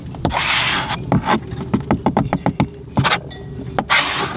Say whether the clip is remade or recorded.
recorded